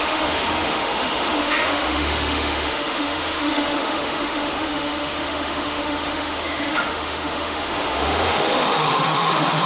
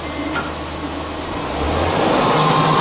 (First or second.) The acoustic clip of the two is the second